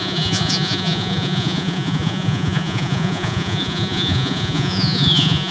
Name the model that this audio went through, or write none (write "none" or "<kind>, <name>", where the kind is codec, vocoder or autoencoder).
vocoder, Vocos